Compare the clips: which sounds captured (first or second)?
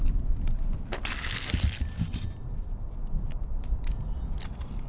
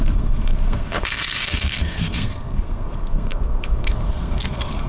first